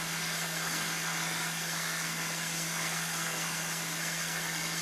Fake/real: fake